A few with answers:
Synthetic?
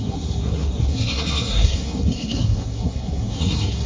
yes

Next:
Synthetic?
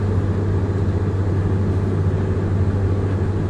no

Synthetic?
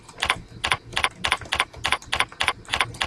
no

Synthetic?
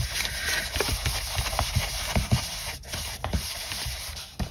no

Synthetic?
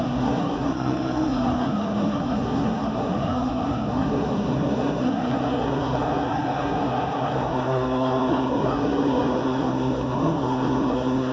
yes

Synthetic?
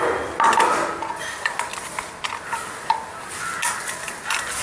no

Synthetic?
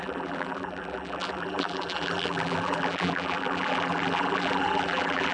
yes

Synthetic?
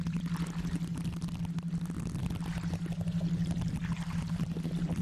no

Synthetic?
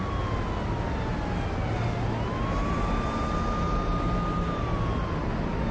no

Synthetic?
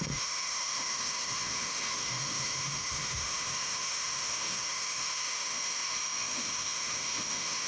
yes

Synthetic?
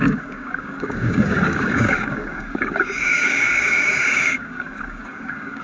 yes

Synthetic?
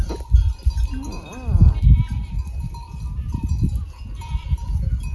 yes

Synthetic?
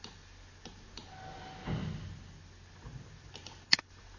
no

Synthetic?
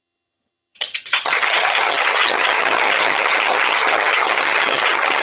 yes